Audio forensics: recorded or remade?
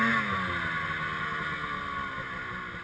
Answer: recorded